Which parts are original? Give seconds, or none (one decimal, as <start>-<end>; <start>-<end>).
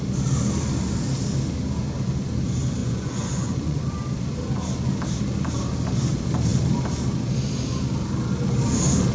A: 0.0-2.8; 3.8-9.1